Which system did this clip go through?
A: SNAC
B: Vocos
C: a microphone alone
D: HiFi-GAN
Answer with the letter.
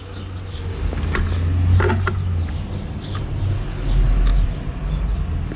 C